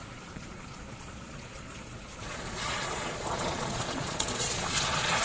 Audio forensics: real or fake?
fake